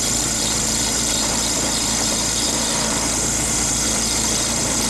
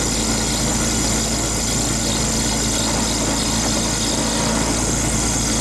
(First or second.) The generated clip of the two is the first